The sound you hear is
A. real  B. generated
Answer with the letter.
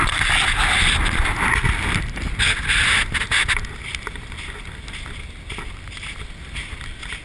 A